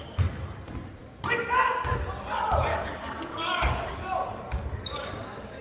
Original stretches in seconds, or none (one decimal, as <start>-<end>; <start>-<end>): 0.0-2.7